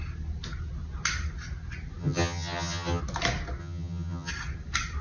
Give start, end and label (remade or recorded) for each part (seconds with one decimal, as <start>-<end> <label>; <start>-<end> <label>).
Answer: 0.0-2.0 recorded; 2.0-3.0 remade; 3.0-3.6 recorded; 3.6-4.3 remade; 4.3-5.0 recorded